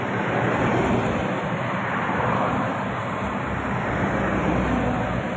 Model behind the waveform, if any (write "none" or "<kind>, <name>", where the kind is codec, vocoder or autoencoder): none